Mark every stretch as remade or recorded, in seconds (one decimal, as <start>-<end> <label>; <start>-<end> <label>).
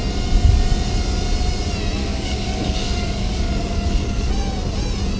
0.0-2.0 recorded; 2.0-4.3 remade; 4.3-5.2 recorded